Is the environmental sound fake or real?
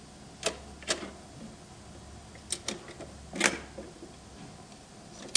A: real